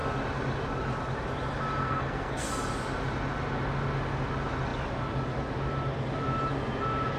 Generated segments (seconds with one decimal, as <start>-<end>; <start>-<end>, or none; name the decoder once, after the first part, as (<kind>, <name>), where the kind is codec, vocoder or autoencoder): 1.8-2.5 (codec, SNAC)